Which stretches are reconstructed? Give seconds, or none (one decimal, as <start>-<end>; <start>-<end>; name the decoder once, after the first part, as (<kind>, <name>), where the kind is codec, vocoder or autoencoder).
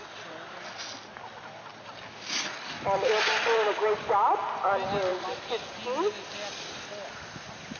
none